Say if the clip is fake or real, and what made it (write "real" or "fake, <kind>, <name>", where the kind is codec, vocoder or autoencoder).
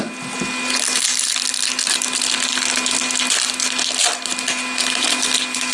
real